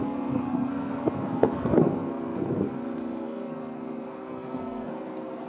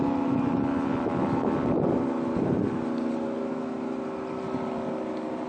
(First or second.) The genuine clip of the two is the second